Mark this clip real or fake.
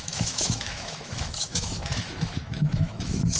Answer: fake